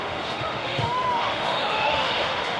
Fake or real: fake